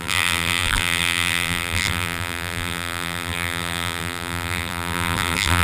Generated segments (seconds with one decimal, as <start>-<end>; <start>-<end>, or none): 0.0-5.6